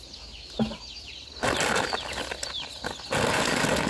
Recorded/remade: recorded